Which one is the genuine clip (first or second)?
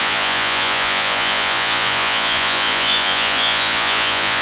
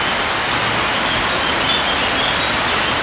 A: second